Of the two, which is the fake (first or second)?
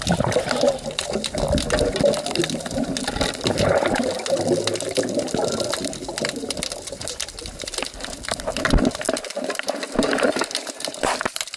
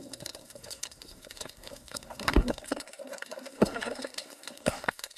second